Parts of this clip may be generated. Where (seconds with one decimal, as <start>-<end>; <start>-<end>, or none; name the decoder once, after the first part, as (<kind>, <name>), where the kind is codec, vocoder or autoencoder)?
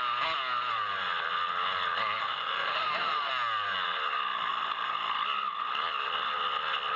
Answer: 2.2-3.3 (autoencoder, DAC-VAE)